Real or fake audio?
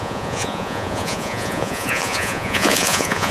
fake